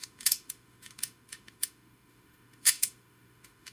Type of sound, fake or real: fake